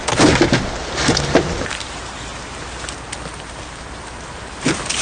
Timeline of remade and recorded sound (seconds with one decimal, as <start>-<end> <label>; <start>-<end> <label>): 0.0-1.8 recorded; 1.8-2.3 remade; 2.3-3.4 recorded; 3.4-5.0 remade